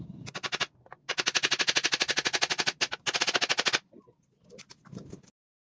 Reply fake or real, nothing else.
real